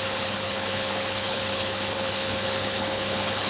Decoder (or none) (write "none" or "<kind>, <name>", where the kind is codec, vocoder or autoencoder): codec, HILCodec